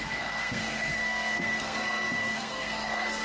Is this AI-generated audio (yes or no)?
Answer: yes